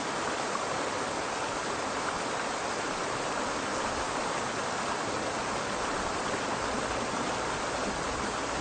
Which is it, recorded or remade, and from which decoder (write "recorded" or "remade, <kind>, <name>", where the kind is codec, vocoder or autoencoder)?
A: recorded